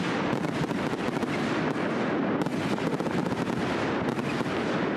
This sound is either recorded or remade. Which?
recorded